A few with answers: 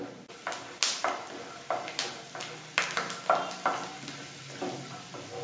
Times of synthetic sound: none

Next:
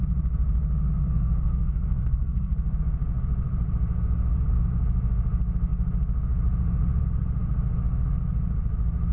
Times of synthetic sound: 1.0-2.8

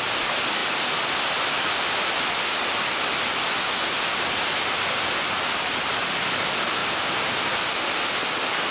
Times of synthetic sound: none

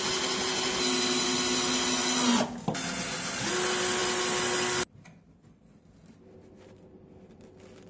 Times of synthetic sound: none